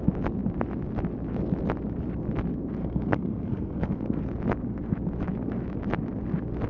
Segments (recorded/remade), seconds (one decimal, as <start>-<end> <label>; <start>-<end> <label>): 0.0-2.8 recorded; 2.8-4.2 remade; 4.2-6.7 recorded